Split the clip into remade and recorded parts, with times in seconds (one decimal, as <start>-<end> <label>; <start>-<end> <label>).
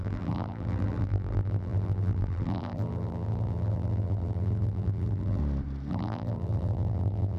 0.0-5.4 remade; 5.4-5.9 recorded; 5.9-7.4 remade